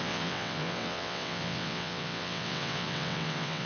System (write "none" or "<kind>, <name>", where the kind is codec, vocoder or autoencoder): vocoder, WaveNeXt